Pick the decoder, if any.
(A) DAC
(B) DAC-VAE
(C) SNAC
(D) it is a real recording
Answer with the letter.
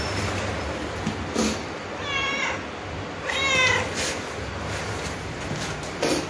D